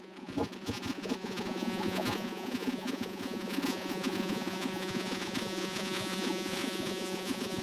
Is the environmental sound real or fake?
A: fake